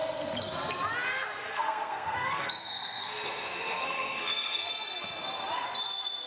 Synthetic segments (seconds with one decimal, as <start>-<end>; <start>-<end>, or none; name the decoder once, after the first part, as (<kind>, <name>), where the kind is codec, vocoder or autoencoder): 1.4-4.7 (codec, SNAC)